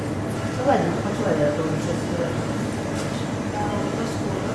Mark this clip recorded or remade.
recorded